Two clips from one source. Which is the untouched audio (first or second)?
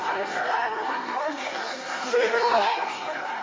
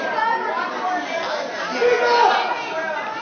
second